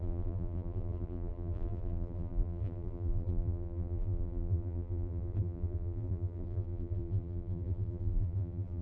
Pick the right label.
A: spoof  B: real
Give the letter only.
A